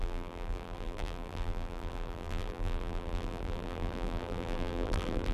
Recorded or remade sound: remade